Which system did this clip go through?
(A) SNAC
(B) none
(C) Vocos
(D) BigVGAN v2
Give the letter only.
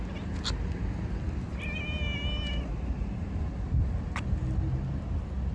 B